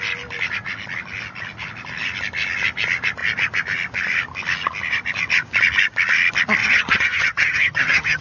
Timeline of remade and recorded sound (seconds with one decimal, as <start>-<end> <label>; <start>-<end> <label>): 0.0-6.6 recorded; 6.6-8.2 remade